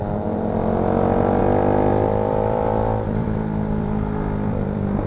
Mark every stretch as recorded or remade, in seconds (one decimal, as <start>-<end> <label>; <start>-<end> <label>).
0.0-1.9 recorded; 1.9-5.1 remade